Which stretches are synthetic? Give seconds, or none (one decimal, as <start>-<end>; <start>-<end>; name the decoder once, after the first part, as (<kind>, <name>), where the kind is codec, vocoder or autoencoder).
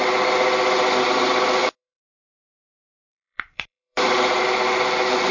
1.6-2.2 (vocoder, BigVGAN v2); 2.7-4.4